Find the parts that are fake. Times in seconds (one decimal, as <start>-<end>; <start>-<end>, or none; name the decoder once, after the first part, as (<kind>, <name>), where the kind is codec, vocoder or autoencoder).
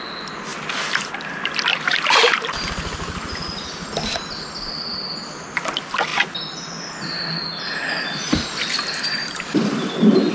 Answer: none